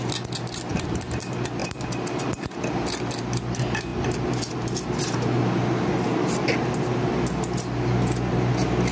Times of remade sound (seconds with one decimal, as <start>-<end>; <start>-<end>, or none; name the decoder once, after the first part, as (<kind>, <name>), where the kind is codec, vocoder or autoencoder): 3.9-4.9 (vocoder, BigVGAN v2)

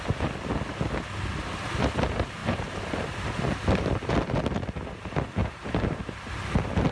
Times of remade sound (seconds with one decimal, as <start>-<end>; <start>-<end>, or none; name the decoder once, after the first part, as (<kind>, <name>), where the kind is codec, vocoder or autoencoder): 2.4-3.4 (vocoder, BigVGAN v2); 5.4-6.3